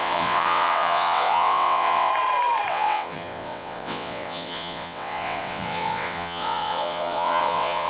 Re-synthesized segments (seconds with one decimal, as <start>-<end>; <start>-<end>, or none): 0.0-2.1; 2.7-7.9